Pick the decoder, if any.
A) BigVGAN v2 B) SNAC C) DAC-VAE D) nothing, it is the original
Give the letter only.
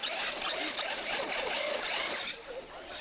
D